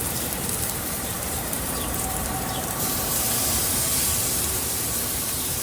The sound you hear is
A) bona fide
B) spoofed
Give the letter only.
B